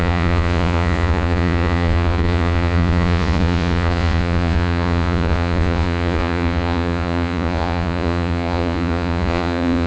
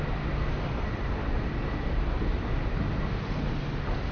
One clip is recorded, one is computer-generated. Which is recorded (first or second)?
second